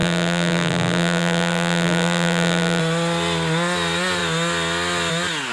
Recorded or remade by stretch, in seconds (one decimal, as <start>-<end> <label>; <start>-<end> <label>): 0.0-2.8 remade; 2.8-5.5 recorded